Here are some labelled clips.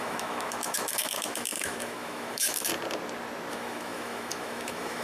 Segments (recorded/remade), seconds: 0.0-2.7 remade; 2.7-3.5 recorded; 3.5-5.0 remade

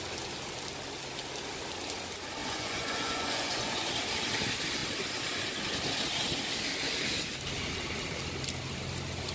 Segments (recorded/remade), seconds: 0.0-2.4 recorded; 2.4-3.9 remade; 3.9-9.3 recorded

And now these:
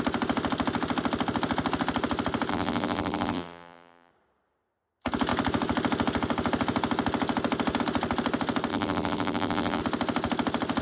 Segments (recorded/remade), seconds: 0.0-2.5 recorded; 2.5-4.1 remade; 4.1-8.7 recorded; 8.7-9.8 remade; 9.8-10.8 recorded

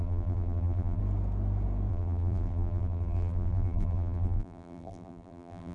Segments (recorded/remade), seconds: 0.0-1.0 remade; 1.0-1.9 recorded; 1.9-5.7 remade

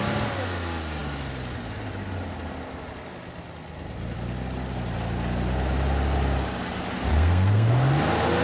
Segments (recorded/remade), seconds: 0.0-7.1 recorded; 7.1-7.7 remade; 7.7-8.4 recorded

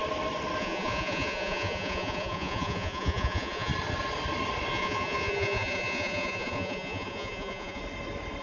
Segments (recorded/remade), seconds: 0.0-0.6 recorded; 0.6-3.7 remade; 3.7-4.7 recorded; 4.7-7.8 remade; 7.8-8.4 recorded